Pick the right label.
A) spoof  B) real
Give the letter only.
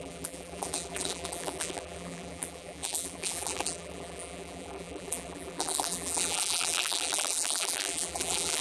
A